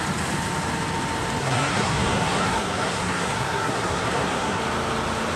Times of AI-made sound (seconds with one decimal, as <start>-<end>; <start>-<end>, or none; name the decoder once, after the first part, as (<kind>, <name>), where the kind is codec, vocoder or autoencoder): 1.4-4.6 (codec, SNAC)